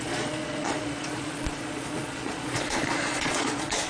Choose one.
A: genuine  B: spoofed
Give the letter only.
B